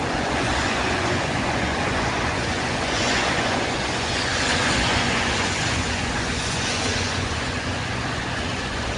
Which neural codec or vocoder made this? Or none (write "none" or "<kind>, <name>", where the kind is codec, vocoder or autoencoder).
vocoder, Vocos